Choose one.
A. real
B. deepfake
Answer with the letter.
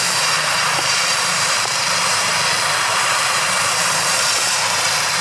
B